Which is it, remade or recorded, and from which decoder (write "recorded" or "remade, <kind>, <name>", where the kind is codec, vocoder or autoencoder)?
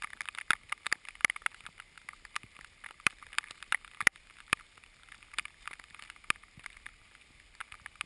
recorded